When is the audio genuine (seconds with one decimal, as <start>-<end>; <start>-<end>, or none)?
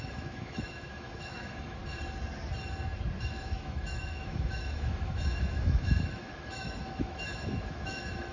1.8-3.2